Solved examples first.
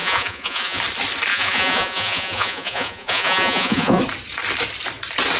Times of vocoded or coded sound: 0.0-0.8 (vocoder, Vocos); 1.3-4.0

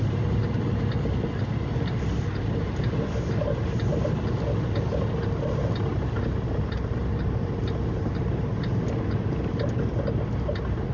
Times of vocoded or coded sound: none

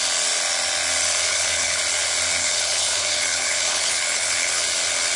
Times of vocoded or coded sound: 1.3-1.8 (codec, HILCodec); 2.4-4.6

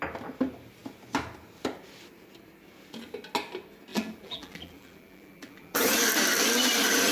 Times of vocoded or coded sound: 3.9-5.8 (vocoder, BigVGAN v2)

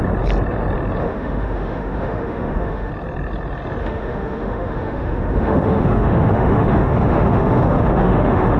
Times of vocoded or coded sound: 1.0-2.9 (autoencoder, DAC-VAE); 3.8-8.6

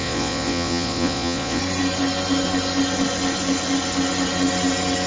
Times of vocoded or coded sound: 0.0-1.6 (vocoder, Vocos)

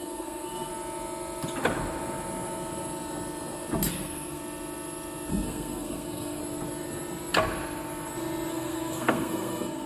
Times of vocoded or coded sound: 0.0-0.7 (codec, SNAC); 3.9-4.4; 5.3-6.4; 8.5-9.9

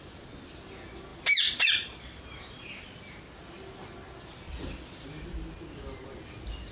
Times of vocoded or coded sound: none